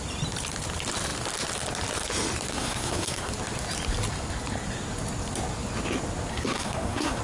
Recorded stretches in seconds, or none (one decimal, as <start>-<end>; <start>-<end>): 0.0-2.5; 3.3-6.3